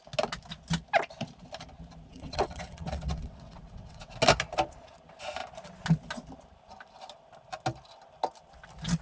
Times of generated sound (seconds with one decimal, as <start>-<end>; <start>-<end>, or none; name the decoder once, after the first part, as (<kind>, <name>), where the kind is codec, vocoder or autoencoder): 2.1-4.1 (vocoder, WaveNeXt)